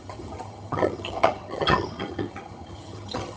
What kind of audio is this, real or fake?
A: fake